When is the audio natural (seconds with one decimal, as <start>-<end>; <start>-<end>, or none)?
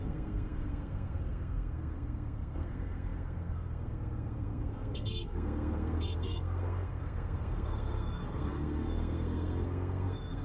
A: none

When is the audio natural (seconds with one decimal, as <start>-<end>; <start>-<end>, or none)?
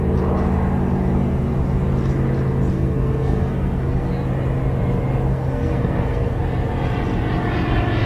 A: 0.0-2.7; 4.1-5.3; 6.4-8.1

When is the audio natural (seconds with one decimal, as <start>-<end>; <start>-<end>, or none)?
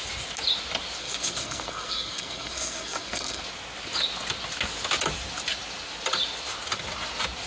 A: 0.0-1.0; 3.4-7.5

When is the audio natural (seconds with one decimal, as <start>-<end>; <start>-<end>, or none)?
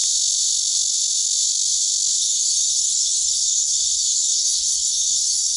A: 0.0-2.2